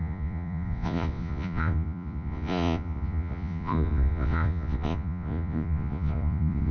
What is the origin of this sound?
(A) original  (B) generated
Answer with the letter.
B